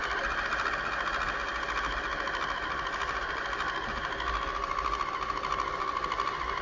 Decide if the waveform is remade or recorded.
recorded